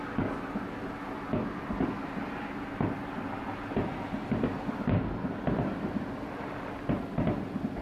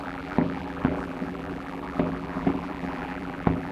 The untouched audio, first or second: first